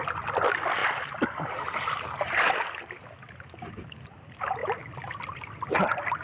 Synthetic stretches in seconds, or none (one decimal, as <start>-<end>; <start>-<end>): none